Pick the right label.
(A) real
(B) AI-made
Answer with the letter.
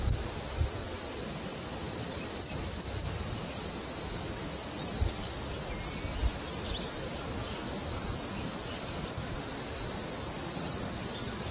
A